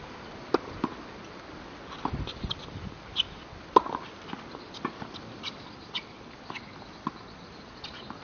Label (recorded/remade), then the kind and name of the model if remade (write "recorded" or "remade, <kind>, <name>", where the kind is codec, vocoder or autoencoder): recorded